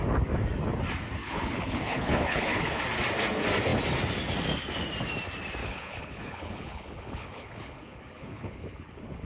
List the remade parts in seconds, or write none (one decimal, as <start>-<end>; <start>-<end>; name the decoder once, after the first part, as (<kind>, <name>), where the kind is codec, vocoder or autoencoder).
1.2-2.8 (codec, HILCodec); 5.6-9.3